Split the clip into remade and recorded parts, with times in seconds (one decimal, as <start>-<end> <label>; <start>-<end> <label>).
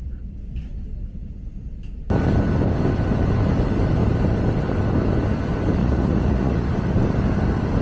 0.0-5.8 recorded; 5.8-6.7 remade; 6.7-7.8 recorded